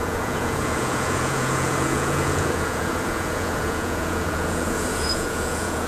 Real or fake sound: fake